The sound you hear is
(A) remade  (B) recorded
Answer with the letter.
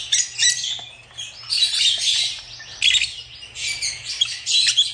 B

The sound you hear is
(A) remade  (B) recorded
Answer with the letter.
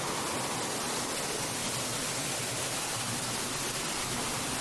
B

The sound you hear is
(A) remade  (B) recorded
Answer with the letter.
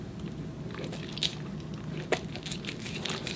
B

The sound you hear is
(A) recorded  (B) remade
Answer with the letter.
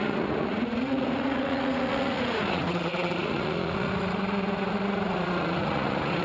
B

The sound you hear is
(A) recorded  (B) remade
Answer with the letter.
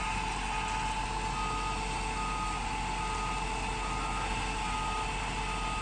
A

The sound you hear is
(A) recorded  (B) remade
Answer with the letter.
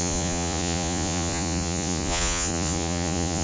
B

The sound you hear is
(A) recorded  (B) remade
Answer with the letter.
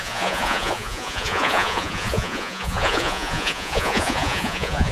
B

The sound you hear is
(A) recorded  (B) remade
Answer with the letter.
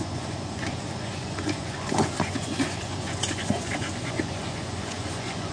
B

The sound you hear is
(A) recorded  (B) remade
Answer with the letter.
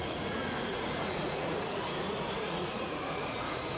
B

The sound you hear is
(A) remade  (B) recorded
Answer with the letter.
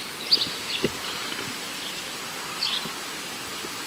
B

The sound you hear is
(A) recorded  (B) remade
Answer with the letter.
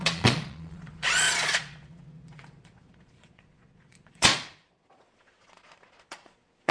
B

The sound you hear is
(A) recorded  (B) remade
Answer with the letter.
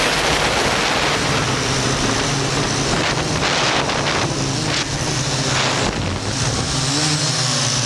A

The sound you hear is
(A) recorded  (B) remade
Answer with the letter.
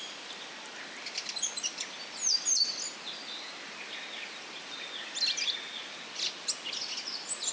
A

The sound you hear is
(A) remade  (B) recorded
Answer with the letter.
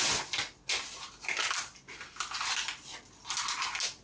B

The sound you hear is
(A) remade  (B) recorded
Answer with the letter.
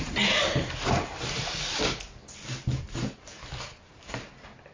B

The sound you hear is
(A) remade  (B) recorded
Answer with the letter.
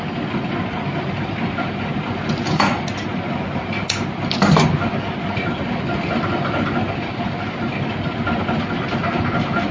B